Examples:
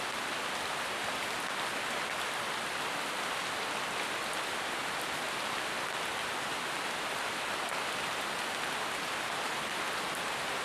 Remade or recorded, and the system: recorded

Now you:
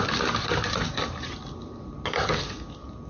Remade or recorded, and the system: recorded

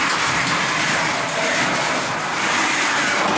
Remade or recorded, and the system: recorded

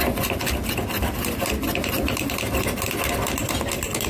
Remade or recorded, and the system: recorded